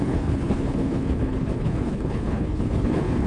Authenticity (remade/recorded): remade